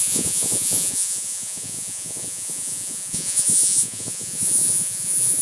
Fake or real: fake